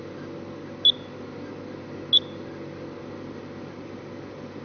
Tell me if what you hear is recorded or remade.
recorded